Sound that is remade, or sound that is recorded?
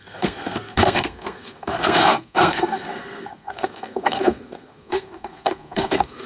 remade